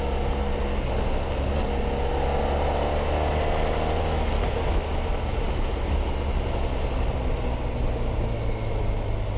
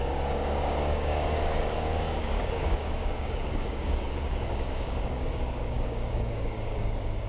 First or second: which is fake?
second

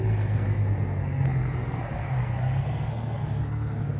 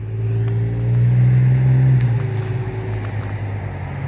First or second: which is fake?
first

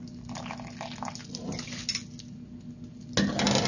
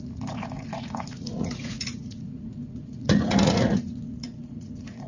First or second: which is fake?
second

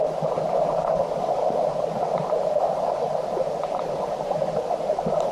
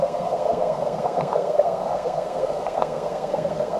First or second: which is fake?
second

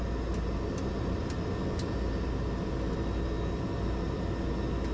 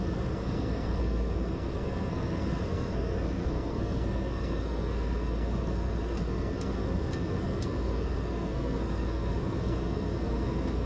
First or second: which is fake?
second